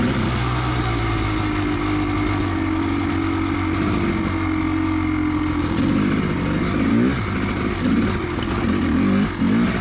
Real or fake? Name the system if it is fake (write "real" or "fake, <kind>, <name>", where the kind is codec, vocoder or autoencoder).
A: real